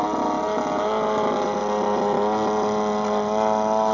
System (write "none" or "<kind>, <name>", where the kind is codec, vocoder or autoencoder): none